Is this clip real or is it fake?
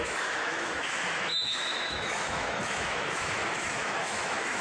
fake